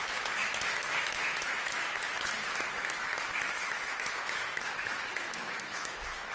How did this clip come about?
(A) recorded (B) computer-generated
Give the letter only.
B